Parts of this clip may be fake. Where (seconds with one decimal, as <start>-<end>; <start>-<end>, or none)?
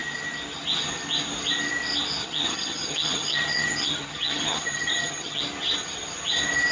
2.2-5.4